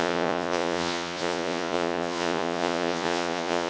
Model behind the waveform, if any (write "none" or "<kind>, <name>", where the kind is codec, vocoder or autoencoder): vocoder, Vocos